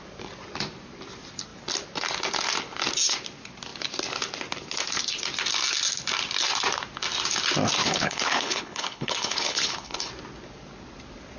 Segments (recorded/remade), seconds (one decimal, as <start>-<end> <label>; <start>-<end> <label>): 0.0-7.8 recorded; 7.8-10.1 remade; 10.1-11.4 recorded